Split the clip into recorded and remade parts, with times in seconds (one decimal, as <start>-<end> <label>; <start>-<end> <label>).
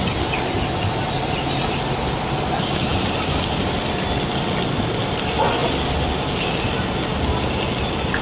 0.0-8.2 recorded